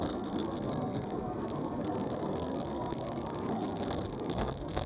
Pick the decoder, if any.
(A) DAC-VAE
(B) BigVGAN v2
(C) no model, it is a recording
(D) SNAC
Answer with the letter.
D